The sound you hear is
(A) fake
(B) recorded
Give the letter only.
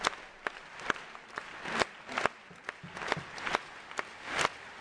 B